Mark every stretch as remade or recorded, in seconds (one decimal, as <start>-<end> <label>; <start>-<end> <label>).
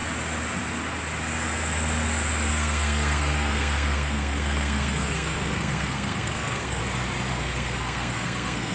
0.0-2.5 recorded; 2.5-6.8 remade; 6.8-7.3 recorded; 7.3-8.7 remade